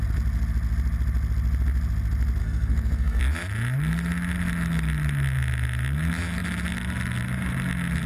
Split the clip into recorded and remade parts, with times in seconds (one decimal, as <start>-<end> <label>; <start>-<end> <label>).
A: 0.0-2.4 recorded; 2.4-3.2 remade; 3.2-8.1 recorded